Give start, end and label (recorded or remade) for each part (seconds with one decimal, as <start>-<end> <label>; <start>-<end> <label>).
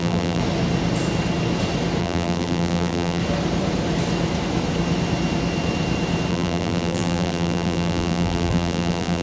0.0-0.4 remade; 0.4-2.0 recorded; 2.0-3.2 remade; 3.2-6.3 recorded; 6.3-9.2 remade